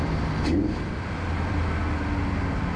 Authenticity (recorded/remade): recorded